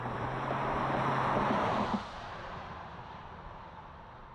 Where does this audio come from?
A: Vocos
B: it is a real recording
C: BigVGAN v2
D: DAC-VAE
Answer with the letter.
C